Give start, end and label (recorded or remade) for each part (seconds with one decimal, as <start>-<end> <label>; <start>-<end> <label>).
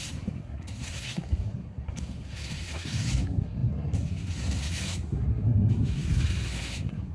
0.0-7.1 remade